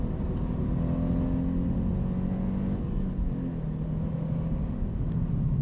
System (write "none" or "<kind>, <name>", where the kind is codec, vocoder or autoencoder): none